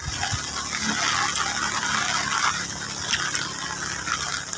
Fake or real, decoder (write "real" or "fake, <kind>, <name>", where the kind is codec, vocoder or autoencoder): real